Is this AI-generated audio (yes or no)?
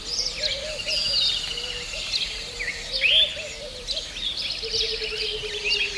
no